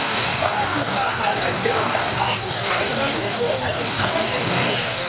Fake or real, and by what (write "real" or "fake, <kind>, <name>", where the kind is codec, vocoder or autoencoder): fake, codec, DAC